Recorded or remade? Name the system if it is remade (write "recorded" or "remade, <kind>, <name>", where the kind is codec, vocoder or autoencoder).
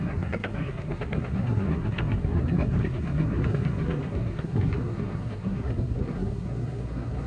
remade, codec, SNAC